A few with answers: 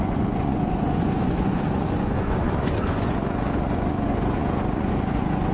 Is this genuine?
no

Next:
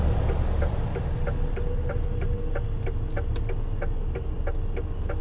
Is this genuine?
yes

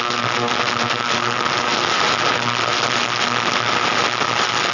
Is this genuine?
yes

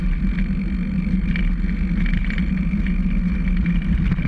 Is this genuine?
yes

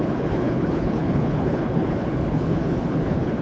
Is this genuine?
no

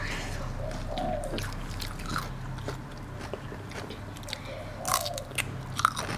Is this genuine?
yes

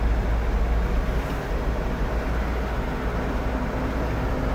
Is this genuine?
yes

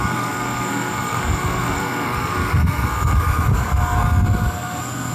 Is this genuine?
no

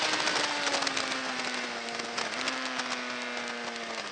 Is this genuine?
yes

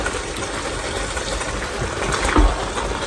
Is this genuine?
no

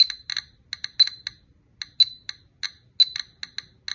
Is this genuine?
yes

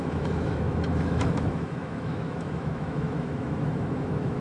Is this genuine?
no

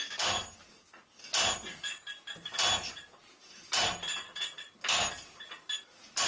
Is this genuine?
yes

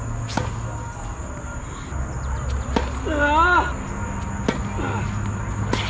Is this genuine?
yes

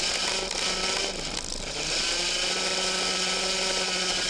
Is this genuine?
yes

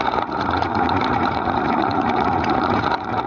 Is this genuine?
no